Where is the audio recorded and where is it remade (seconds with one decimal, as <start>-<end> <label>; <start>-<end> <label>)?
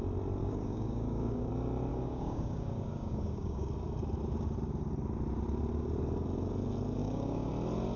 0.0-0.4 recorded; 0.4-1.5 remade; 1.5-1.9 recorded; 1.9-3.7 remade; 3.7-7.0 recorded; 7.0-7.5 remade; 7.5-8.0 recorded